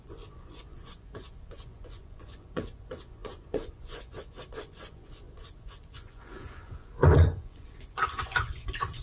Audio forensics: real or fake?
fake